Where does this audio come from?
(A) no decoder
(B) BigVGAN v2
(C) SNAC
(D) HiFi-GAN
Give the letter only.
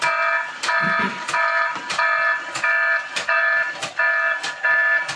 A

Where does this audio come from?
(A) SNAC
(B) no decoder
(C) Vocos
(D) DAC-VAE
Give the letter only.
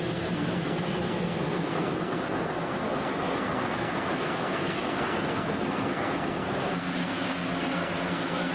A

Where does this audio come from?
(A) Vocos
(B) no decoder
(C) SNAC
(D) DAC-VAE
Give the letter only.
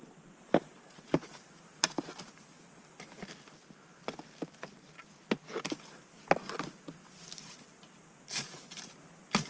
B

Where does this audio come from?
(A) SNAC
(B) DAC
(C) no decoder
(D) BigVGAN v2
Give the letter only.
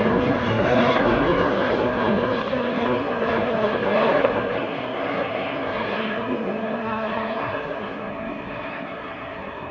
A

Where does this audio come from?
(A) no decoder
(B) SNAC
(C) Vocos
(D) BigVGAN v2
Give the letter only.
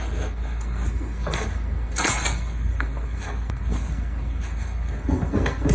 B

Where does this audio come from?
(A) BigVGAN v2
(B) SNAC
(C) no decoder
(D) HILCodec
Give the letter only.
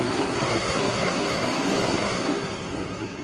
B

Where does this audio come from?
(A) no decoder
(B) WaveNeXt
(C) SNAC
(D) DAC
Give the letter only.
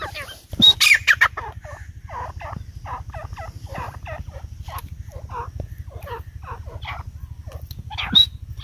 A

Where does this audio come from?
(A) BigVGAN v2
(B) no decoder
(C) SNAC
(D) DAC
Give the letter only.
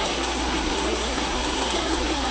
C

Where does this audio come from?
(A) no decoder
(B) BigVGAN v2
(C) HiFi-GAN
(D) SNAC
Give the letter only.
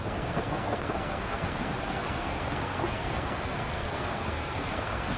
D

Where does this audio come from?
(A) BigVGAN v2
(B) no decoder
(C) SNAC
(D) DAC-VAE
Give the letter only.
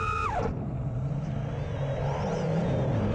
B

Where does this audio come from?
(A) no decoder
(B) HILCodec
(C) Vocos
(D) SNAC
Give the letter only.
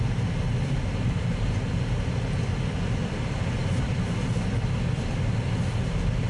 A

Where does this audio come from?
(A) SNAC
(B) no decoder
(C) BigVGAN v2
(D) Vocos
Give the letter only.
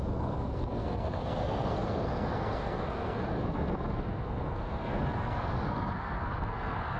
A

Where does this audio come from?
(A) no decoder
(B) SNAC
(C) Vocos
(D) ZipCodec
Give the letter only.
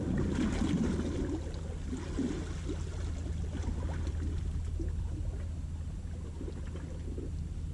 A